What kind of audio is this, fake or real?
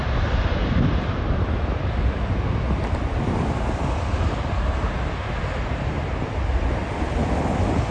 real